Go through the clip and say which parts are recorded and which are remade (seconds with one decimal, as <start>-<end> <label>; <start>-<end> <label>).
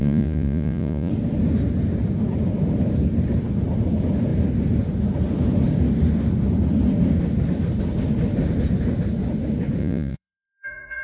0.0-1.1 remade; 1.1-9.8 recorded; 9.8-11.0 remade